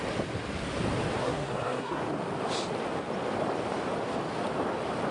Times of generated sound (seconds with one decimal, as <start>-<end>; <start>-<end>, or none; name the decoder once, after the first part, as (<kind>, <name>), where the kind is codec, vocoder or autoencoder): 1.2-2.0 (codec, SNAC)